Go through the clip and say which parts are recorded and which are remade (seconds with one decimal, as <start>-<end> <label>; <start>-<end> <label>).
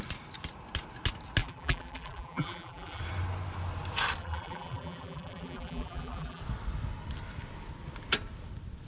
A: 0.0-1.4 recorded; 1.4-3.0 remade; 3.0-4.2 recorded; 4.2-6.4 remade; 6.4-8.9 recorded